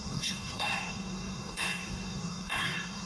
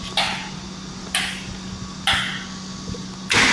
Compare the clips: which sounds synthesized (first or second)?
first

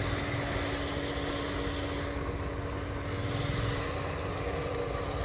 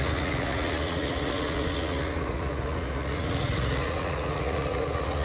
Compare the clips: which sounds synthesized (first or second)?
second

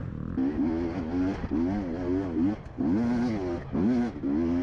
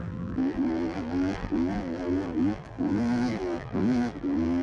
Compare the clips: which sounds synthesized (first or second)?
second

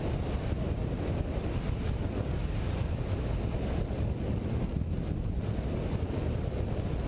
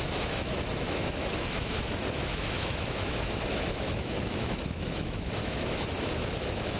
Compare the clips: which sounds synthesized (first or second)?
second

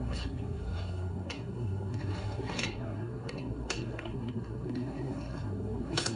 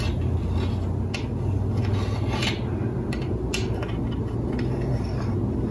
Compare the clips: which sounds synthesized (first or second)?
first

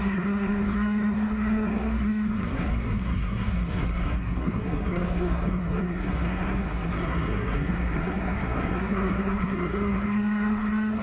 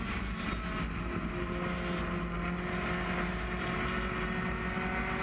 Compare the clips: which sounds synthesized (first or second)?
first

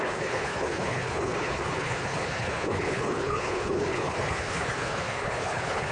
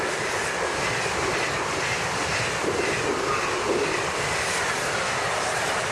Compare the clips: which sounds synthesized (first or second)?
first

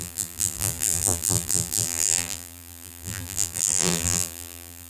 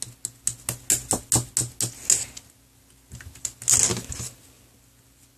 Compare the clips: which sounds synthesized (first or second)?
first